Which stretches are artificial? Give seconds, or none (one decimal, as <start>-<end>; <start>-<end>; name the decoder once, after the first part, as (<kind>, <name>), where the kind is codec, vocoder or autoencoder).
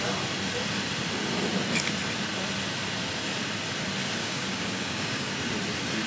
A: 4.2-5.3 (codec, DAC)